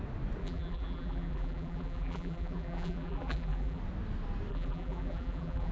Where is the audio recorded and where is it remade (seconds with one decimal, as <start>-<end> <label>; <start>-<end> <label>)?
0.0-0.4 recorded; 0.4-3.8 remade; 3.8-4.5 recorded; 4.5-5.7 remade